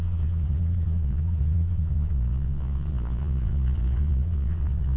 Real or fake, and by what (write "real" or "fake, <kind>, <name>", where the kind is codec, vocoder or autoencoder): fake, vocoder, Vocos